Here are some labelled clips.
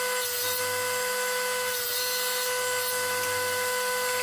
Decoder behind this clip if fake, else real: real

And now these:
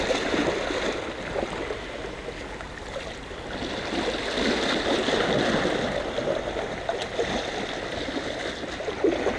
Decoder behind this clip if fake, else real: real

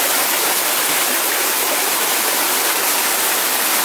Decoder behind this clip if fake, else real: real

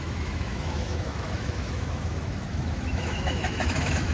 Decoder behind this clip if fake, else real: fake, autoencoder, DAC-VAE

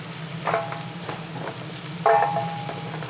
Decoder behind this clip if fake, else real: real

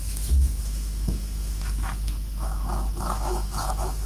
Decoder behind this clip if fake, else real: fake, autoencoder, DAC-VAE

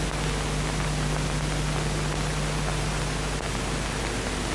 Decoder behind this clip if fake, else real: real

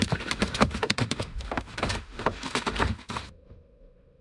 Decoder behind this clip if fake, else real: fake, autoencoder, DAC-VAE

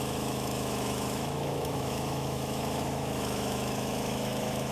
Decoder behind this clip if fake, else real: fake, autoencoder, DAC-VAE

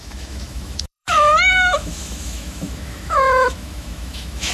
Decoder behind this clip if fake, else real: fake, autoencoder, DAC-VAE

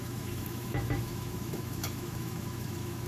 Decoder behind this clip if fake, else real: fake, autoencoder, DAC-VAE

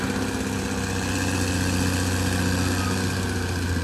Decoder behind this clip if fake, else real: real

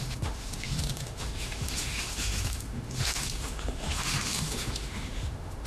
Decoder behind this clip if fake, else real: fake, autoencoder, DAC-VAE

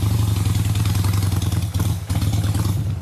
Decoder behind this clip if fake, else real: real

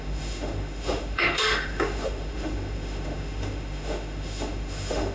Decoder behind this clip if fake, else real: fake, autoencoder, DAC-VAE